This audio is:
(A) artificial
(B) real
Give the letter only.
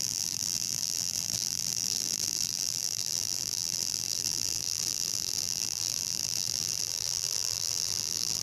A